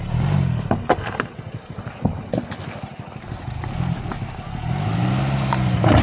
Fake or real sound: real